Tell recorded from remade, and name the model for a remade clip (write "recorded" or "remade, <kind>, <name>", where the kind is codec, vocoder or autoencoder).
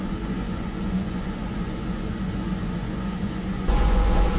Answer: remade, vocoder, Vocos